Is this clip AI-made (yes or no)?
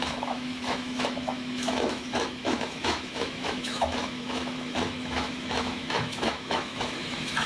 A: yes